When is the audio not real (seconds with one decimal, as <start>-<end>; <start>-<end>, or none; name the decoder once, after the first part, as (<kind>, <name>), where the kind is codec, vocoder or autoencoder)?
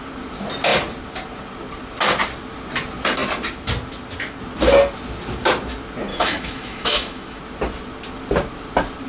6.1-7.4 (autoencoder, DAC-VAE)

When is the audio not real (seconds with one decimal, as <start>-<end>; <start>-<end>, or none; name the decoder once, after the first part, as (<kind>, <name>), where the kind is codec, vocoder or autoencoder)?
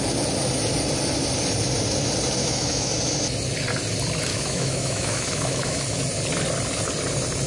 2.4-2.9 (autoencoder, DAC-VAE); 4.3-5.8